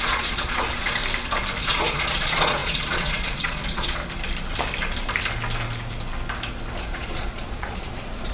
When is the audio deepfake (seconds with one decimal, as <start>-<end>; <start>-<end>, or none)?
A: 0.0-1.0; 1.6-4.0; 6.8-8.3